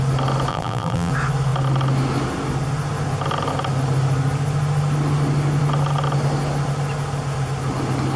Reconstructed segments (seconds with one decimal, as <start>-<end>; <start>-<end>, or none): 0.5-1.1